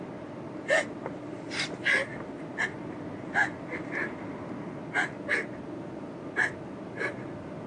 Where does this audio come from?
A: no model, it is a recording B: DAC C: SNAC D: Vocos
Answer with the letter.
A